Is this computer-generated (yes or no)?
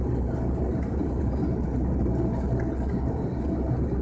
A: no